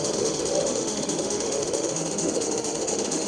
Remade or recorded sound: remade